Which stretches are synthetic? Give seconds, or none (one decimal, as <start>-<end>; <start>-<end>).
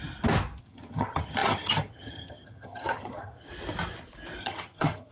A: 0.6-3.5; 4.4-5.1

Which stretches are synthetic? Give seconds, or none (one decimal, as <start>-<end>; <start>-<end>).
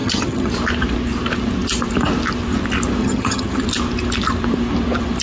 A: 0.0-0.5; 3.0-3.6